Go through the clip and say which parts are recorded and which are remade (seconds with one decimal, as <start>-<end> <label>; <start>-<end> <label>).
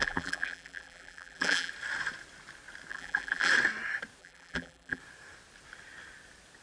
0.0-1.7 remade; 1.7-2.9 recorded; 2.9-3.5 remade; 3.5-4.2 recorded; 4.2-5.0 remade; 5.0-6.6 recorded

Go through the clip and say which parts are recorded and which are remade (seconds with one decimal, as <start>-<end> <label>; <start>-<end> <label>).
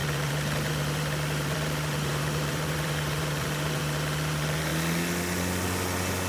0.0-4.7 remade; 4.7-6.3 recorded